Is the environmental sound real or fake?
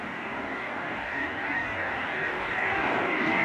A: fake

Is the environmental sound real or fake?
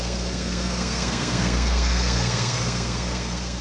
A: fake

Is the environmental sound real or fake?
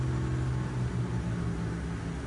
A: real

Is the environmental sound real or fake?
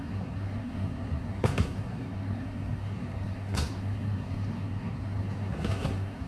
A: fake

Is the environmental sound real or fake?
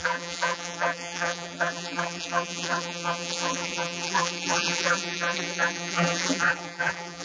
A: fake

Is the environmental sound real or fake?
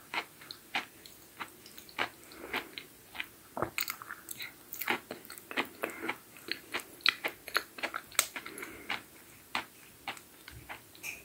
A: real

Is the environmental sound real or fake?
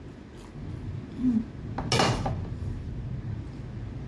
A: real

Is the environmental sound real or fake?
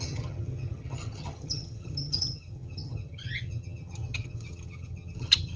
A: fake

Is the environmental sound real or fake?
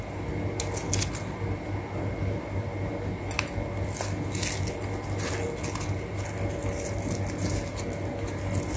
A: real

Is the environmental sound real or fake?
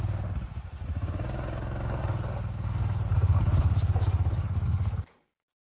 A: real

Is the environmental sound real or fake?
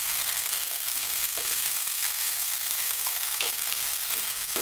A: fake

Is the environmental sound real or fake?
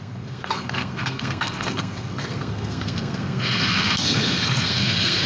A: fake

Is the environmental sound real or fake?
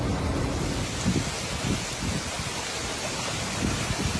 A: real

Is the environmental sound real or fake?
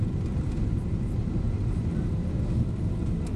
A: real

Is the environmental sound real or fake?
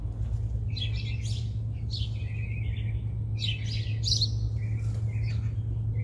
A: real